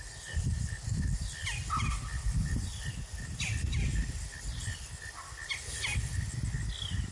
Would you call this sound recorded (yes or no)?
yes